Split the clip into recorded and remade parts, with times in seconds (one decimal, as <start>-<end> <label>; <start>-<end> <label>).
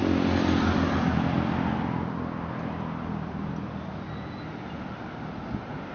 0.0-5.9 recorded